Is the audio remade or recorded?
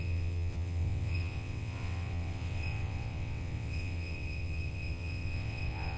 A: remade